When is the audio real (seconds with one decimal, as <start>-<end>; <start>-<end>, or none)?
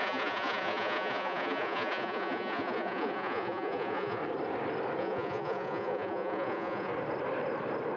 4.2-5.0; 6.9-8.0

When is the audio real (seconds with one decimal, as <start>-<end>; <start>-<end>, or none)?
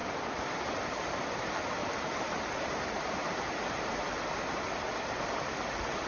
1.0-1.8; 4.1-6.1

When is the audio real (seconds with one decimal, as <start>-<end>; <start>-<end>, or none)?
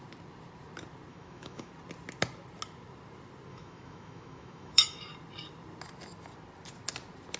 0.0-1.1; 1.7-3.5; 5.0-7.4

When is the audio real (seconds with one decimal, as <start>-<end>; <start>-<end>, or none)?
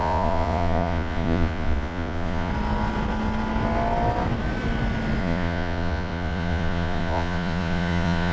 2.5-5.2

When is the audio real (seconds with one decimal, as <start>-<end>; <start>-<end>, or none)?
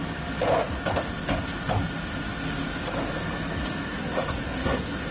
0.0-3.9